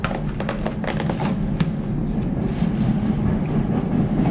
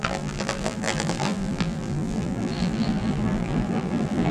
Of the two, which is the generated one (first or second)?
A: second